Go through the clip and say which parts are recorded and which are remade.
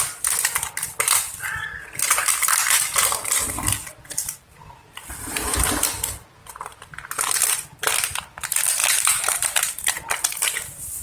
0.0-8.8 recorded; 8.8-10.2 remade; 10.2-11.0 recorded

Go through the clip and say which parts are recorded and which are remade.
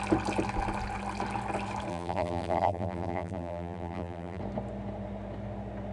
0.0-1.9 recorded; 1.9-4.4 remade; 4.4-5.9 recorded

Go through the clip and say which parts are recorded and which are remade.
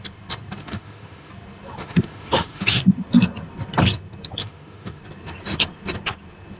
0.0-0.6 recorded; 0.6-1.3 remade; 1.3-1.8 recorded; 1.8-2.8 remade; 2.8-4.4 recorded; 4.4-5.0 remade; 5.0-6.6 recorded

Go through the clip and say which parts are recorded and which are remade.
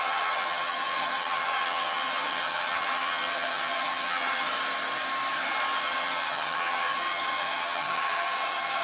0.0-4.5 remade; 4.5-5.8 recorded; 5.8-8.8 remade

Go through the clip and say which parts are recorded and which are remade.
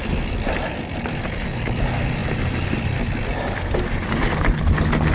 0.0-5.1 recorded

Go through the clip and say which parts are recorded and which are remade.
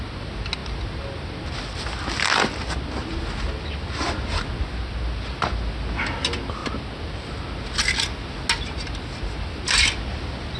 0.0-10.6 recorded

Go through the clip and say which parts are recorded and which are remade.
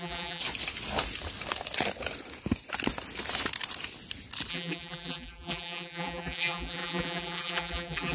0.0-0.4 remade; 0.4-4.5 recorded; 4.5-8.1 remade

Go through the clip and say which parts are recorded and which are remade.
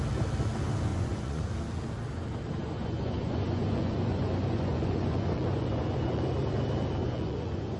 0.0-0.9 recorded; 0.9-1.5 remade; 1.5-2.6 recorded; 2.6-6.3 remade; 6.3-7.0 recorded; 7.0-7.8 remade